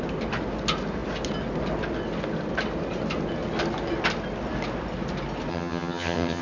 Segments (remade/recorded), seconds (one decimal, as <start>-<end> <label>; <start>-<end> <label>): 0.0-5.5 recorded; 5.5-6.4 remade